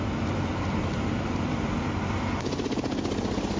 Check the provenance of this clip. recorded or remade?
recorded